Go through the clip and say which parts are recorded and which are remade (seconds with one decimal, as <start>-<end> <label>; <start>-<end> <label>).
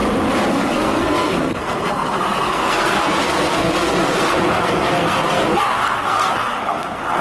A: 0.0-0.5 recorded; 0.5-7.2 remade